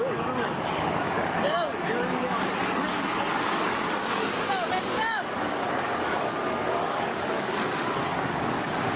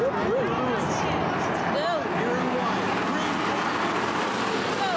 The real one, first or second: second